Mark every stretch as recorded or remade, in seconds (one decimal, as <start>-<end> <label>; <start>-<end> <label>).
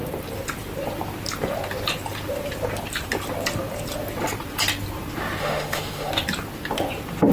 0.0-5.4 recorded; 5.4-6.1 remade; 6.1-7.3 recorded